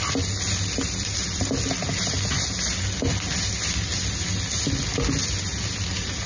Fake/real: real